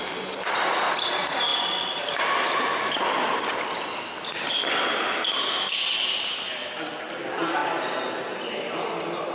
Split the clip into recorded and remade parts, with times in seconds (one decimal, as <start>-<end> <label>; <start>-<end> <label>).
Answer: 0.0-9.3 recorded